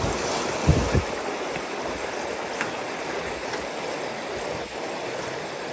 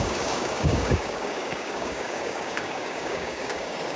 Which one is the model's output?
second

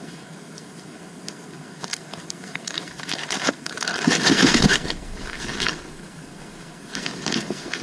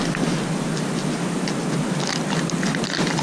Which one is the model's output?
first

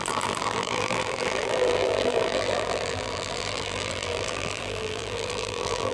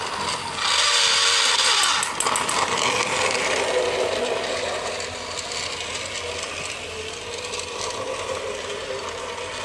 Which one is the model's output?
first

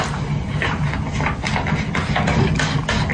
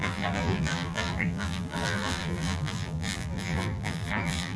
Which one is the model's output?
second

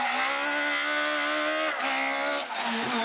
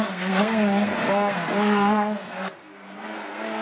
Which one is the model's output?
second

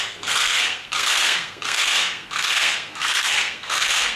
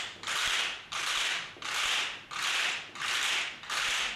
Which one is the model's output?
first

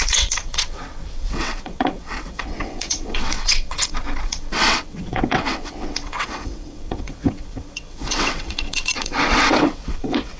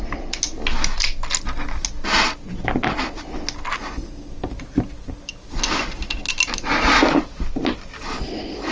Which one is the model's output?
first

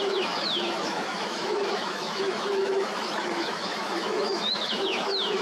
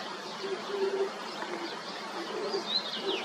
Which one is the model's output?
first